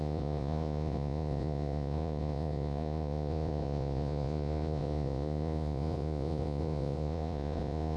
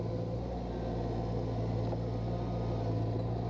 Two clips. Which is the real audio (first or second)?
second